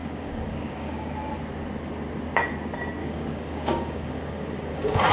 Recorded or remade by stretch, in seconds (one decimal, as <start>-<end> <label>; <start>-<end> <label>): 0.0-1.1 remade; 1.1-3.0 recorded; 3.0-5.1 remade